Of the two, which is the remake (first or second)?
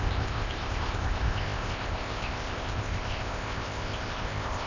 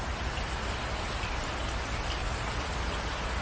first